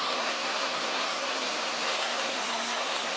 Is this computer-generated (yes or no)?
yes